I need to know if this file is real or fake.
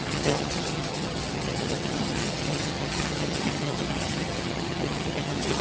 fake